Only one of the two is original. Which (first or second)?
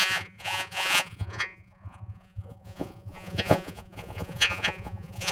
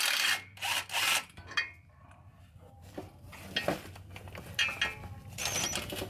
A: second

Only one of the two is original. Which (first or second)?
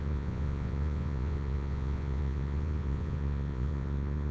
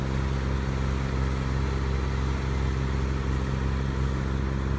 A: second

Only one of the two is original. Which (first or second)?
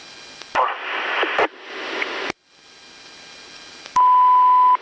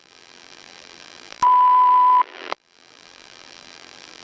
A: first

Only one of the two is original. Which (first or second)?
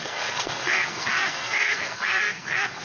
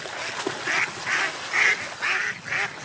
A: second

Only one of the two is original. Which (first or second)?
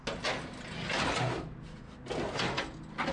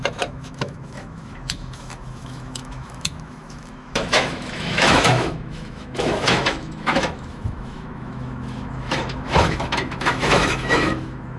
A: first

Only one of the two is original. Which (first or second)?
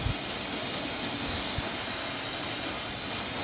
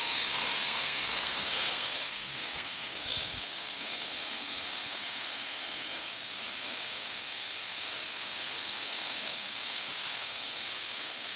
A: first